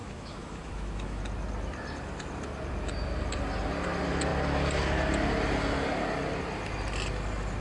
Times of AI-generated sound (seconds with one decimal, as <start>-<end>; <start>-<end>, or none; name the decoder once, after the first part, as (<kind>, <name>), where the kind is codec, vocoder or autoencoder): 0.0-1.2 (autoencoder, DAC-VAE)